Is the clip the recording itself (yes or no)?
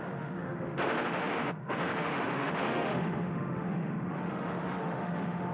no